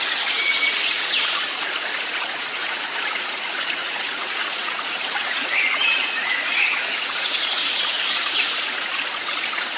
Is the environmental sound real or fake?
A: fake